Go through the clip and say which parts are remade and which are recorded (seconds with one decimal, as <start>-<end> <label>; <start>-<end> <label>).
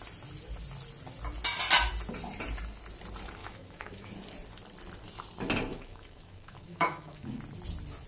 0.0-3.4 recorded; 3.4-4.1 remade; 4.1-5.7 recorded; 5.7-7.4 remade; 7.4-8.1 recorded